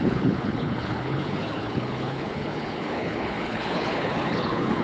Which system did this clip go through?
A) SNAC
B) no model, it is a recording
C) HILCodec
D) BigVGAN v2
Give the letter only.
C